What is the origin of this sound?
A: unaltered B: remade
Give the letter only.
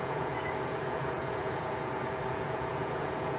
B